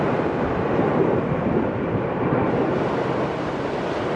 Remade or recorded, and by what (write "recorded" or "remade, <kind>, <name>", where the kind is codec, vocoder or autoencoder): remade, vocoder, BigVGAN v2